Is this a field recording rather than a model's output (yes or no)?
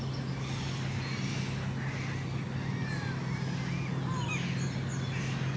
yes